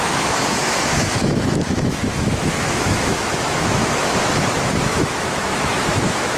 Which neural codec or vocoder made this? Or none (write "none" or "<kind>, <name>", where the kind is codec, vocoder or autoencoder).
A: autoencoder, DAC-VAE